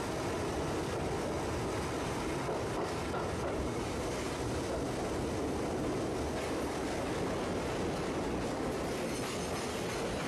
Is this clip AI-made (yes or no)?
no